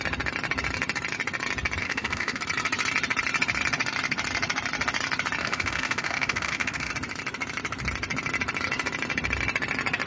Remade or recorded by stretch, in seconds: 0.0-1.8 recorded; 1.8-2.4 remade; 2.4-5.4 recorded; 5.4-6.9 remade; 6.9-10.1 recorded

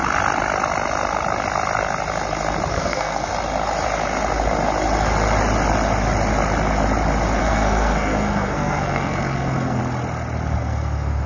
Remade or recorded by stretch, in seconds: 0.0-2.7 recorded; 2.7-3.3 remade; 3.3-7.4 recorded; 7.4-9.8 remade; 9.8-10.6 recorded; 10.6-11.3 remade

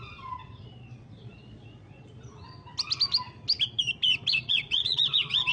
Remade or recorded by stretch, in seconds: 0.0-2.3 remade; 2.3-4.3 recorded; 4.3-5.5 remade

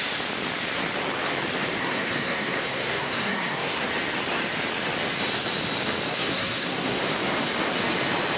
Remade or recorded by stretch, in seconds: 0.0-1.8 recorded; 1.8-3.9 remade; 3.9-6.1 recorded; 6.1-7.0 remade; 7.0-8.4 recorded